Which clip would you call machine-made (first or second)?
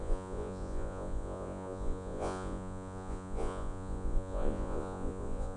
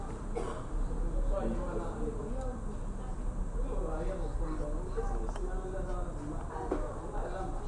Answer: first